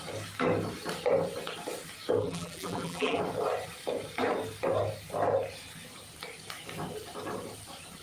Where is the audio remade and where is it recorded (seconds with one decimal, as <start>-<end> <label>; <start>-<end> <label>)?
0.0-2.2 recorded; 2.2-3.2 remade; 3.2-8.0 recorded